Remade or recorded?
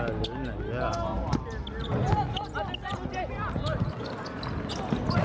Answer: recorded